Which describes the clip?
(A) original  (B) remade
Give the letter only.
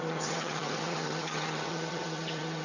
B